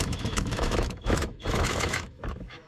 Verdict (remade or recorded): remade